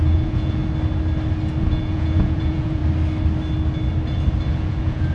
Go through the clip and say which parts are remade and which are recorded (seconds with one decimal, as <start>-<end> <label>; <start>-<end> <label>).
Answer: 0.0-0.6 remade; 0.6-1.6 recorded; 1.6-2.8 remade; 2.8-4.5 recorded; 4.5-5.1 remade